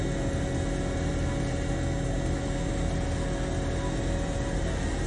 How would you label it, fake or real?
real